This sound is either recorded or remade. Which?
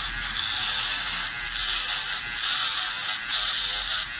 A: recorded